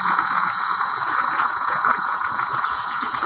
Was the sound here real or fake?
fake